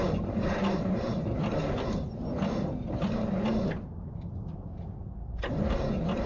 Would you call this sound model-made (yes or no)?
no